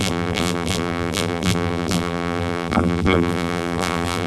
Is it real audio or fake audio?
fake